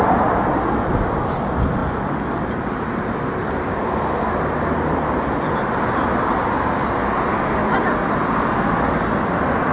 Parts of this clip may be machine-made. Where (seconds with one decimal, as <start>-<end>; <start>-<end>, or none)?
none